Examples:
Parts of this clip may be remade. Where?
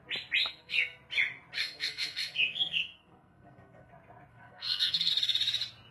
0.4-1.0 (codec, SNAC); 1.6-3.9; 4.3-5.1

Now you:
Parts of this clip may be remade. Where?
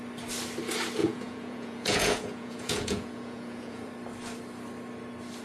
1.0-3.9 (vocoder, Vocos)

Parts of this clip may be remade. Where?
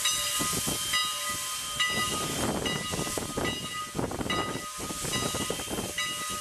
none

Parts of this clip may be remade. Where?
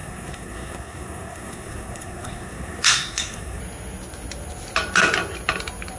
0.0-3.6 (codec, SNAC)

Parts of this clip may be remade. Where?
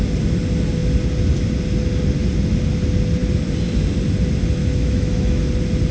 4.6-5.4 (autoencoder, DAC-VAE)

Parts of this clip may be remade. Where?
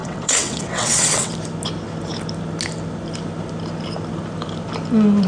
0.0-1.3 (vocoder, WaveNeXt)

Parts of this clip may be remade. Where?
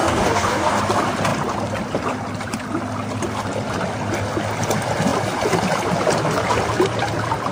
0.0-0.8 (codec, DAC)